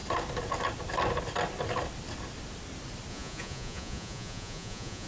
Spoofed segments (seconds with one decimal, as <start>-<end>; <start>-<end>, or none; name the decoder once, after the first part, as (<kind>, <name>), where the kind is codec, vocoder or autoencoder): 3.1-5.1 (vocoder, Vocos)